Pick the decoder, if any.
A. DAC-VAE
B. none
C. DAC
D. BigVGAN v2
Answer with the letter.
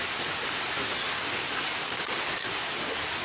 B